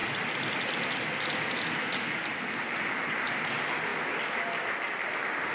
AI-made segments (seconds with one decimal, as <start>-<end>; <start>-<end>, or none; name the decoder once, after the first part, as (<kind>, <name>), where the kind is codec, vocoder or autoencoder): none